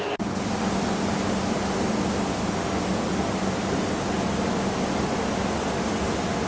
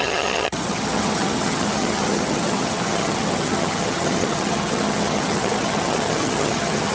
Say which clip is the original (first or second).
first